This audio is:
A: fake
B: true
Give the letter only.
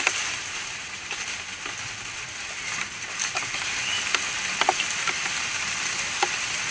B